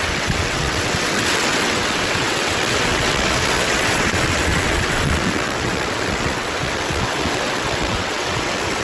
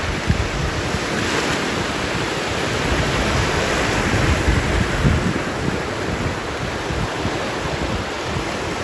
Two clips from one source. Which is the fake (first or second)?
first